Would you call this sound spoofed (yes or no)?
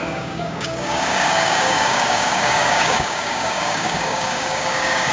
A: yes